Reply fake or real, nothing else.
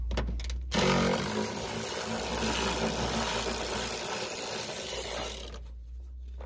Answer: real